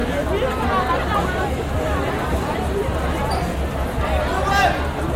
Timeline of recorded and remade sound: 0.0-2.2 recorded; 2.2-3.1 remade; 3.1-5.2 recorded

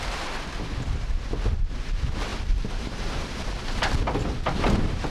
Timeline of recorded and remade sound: 0.0-5.1 recorded

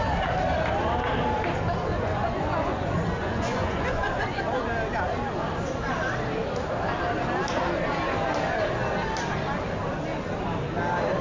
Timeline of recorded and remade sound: 0.0-1.9 recorded; 1.9-4.4 remade; 4.4-11.2 recorded

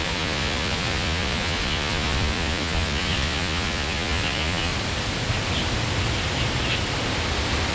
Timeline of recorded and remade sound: 0.0-4.7 remade; 4.7-7.7 recorded

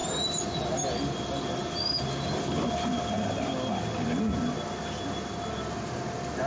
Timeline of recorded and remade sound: 0.0-6.5 recorded

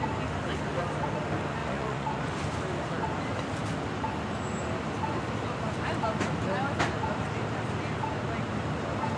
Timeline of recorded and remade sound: 0.0-1.6 recorded; 1.6-2.3 remade; 2.3-9.2 recorded

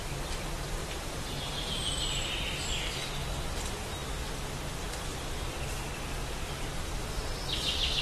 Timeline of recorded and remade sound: 0.0-0.8 recorded; 0.8-1.3 remade; 1.3-5.1 recorded; 5.1-5.7 remade; 5.7-6.2 recorded; 6.2-7.1 remade; 7.1-8.0 recorded